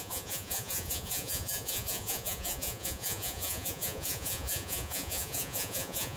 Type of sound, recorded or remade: remade